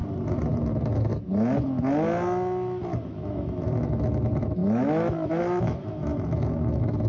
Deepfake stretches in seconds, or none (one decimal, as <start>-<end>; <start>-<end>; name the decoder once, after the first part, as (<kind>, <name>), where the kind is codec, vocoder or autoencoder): 0.5-1.1 (autoencoder, DAC-VAE); 3.0-7.1